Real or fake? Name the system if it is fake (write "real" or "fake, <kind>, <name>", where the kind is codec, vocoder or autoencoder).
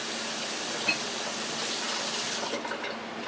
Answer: real